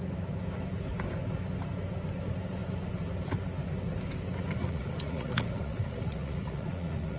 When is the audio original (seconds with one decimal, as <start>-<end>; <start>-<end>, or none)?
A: 0.0-4.6